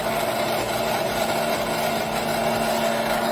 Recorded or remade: recorded